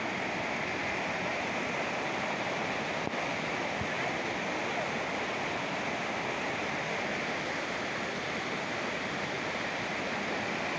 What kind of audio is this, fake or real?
real